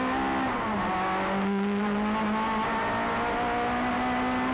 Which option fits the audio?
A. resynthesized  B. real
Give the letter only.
B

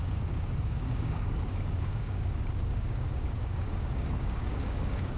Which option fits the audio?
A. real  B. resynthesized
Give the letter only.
B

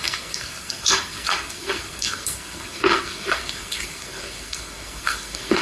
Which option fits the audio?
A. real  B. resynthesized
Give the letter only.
B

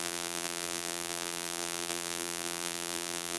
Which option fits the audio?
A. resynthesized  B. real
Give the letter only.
A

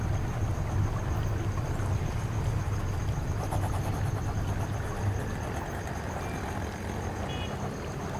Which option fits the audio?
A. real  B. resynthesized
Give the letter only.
A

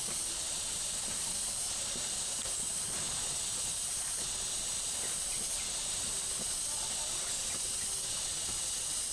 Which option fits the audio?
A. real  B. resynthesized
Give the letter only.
A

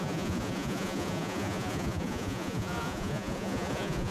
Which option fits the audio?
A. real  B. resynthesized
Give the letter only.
B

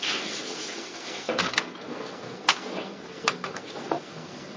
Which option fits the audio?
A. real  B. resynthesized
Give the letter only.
B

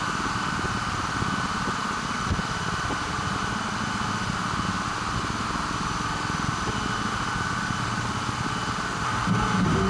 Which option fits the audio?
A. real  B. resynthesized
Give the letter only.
A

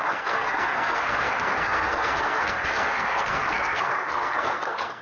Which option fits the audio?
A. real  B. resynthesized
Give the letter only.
B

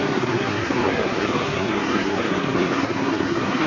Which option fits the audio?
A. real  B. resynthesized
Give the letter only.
B